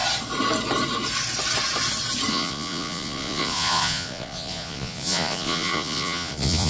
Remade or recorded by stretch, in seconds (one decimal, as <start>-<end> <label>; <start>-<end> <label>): 0.0-2.3 recorded; 2.3-6.7 remade